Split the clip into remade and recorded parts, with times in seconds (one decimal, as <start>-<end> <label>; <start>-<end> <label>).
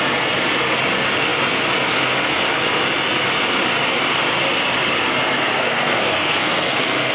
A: 0.0-5.6 recorded; 5.6-7.1 remade